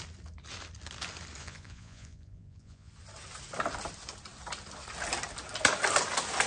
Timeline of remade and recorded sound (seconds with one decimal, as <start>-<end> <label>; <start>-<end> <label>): 0.0-1.4 recorded; 1.4-2.9 remade; 2.9-6.5 recorded

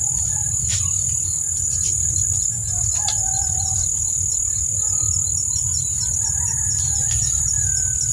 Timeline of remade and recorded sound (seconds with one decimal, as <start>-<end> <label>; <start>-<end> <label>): 0.0-1.9 recorded; 1.9-2.5 remade; 2.5-8.1 recorded

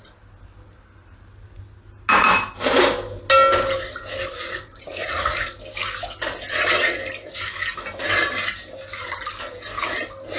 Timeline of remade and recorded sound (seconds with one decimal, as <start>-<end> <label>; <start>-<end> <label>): 0.0-4.4 recorded; 4.4-5.5 remade; 5.5-10.4 recorded

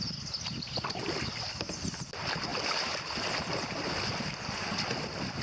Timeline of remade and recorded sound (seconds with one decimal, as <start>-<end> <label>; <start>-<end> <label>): 0.0-5.4 recorded

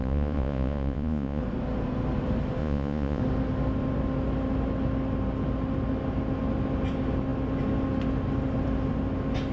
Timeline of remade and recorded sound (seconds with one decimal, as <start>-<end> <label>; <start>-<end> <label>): 0.0-1.4 remade; 1.4-2.6 recorded; 2.6-3.2 remade; 3.2-9.5 recorded